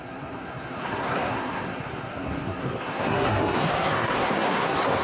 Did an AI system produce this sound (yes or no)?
yes